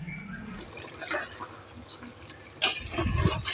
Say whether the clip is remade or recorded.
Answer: recorded